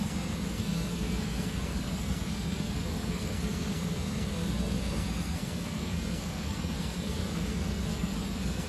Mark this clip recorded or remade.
remade